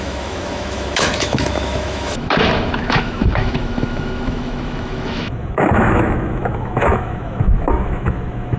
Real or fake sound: fake